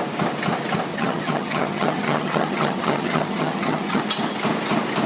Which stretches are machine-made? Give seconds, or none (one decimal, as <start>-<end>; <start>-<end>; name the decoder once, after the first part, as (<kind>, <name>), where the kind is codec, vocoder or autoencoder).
0.9-4.0 (vocoder, HiFi-GAN)